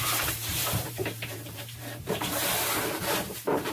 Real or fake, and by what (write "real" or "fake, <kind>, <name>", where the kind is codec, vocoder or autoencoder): fake, vocoder, BigVGAN v2